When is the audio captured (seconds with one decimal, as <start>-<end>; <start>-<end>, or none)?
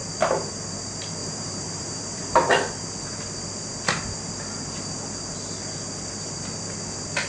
0.0-1.2; 2.5-7.3